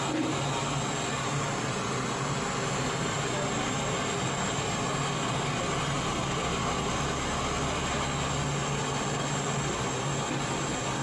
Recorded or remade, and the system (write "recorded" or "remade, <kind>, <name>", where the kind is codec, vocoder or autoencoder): recorded